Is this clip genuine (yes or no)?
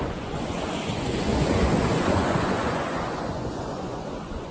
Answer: no